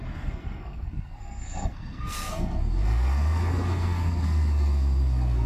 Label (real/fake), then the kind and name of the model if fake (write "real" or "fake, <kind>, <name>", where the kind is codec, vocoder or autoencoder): fake, codec, SNAC